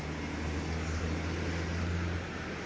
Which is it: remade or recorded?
recorded